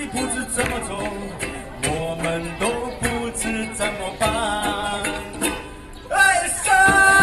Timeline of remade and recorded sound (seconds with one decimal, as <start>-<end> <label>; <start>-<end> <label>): 0.0-0.5 recorded; 0.5-2.1 remade; 2.1-3.0 recorded; 3.0-6.7 remade; 6.7-7.2 recorded